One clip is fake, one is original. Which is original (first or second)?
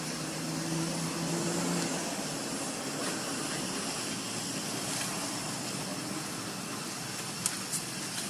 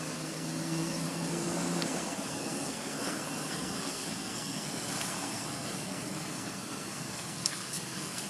first